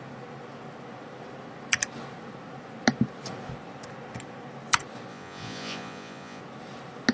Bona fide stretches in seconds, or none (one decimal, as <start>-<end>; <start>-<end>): 0.0-5.1; 6.4-7.1